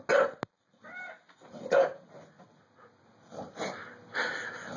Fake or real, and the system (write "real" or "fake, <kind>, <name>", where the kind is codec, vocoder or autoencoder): real